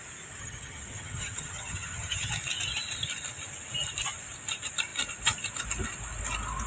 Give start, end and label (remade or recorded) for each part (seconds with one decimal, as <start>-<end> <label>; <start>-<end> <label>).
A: 0.0-0.4 recorded; 0.4-2.3 remade; 2.3-6.7 recorded